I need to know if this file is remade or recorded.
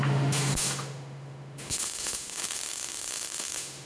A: remade